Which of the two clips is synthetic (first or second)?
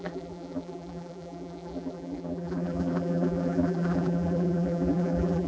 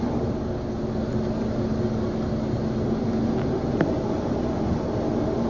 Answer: first